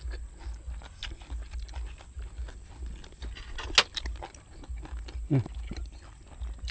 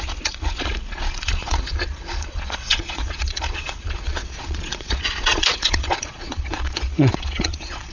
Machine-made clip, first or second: second